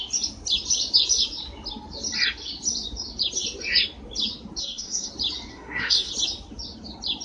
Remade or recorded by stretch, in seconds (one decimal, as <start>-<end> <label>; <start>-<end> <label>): 0.0-4.6 recorded; 4.6-5.1 remade; 5.1-5.5 recorded; 5.5-6.1 remade; 6.1-7.2 recorded